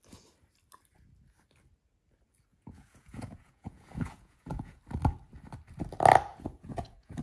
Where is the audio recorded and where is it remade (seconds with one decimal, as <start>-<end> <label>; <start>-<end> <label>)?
0.0-2.5 recorded; 2.5-4.8 remade; 4.8-6.3 recorded; 6.3-7.2 remade